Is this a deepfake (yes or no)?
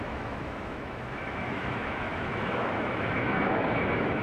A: yes